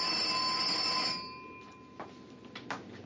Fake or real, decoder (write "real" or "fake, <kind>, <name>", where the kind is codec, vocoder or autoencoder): real